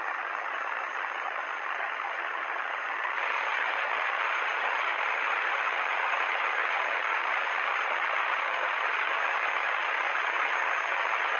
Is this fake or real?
fake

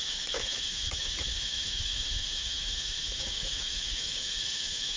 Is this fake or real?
fake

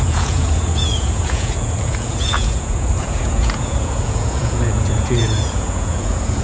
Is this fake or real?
fake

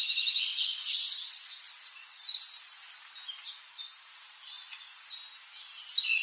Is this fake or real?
real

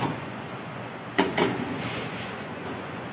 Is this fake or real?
fake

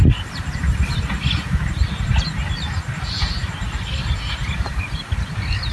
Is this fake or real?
real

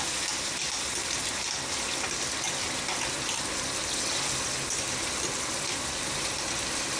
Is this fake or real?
real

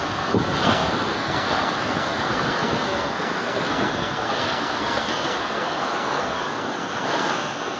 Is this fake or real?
fake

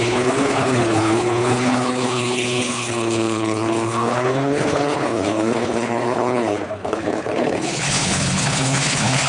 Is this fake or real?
fake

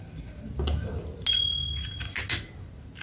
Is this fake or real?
real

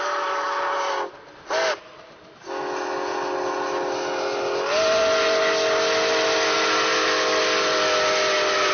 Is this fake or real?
real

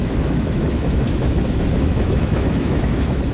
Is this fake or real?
fake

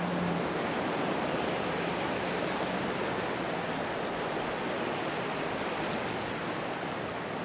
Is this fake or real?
real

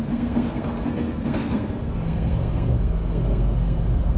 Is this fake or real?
fake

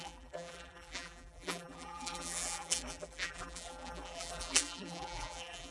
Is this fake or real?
fake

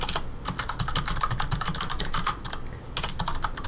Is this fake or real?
real